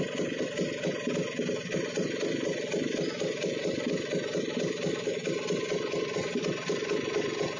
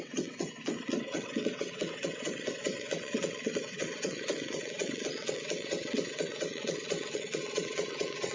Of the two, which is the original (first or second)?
first